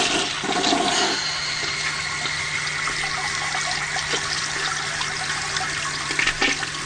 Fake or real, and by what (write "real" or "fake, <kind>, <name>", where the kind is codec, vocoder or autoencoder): real